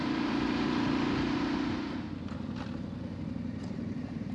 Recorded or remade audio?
recorded